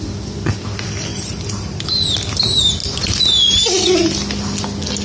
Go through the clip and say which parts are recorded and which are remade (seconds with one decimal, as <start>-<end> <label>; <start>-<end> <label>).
0.0-1.1 recorded; 1.1-1.9 remade; 1.9-5.0 recorded